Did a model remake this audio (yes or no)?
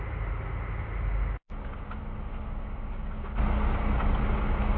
no